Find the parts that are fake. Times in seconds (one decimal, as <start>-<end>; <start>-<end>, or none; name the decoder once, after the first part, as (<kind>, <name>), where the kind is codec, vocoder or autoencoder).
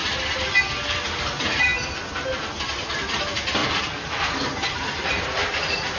1.1-1.7 (vocoder, BigVGAN v2); 3.0-3.6; 4.2-6.0